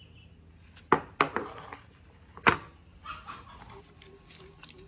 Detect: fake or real real